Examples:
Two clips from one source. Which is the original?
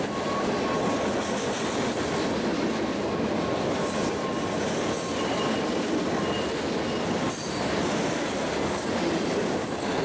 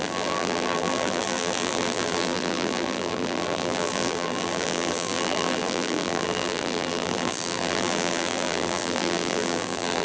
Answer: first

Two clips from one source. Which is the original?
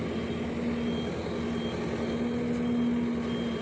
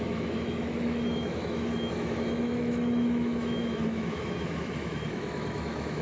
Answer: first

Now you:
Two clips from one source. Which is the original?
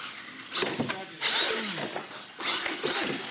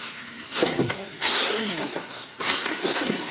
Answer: first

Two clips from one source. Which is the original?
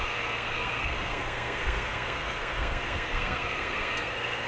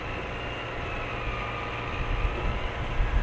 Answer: second